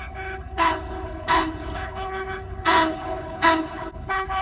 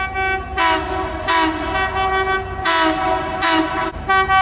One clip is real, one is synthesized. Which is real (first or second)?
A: second